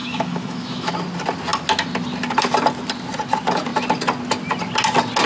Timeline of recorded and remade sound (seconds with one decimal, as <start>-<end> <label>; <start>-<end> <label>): 0.0-0.9 remade; 0.9-5.3 recorded